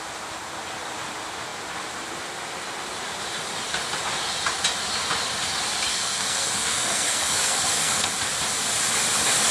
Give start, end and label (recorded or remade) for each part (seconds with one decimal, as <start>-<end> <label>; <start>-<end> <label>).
0.0-5.9 recorded; 5.9-8.1 remade; 8.1-9.5 recorded